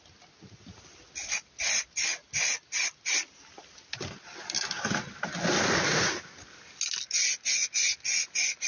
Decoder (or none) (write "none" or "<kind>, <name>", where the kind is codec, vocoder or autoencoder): none